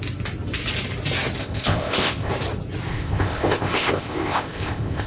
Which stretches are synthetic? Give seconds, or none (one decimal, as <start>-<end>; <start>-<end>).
1.4-2.3; 2.9-5.1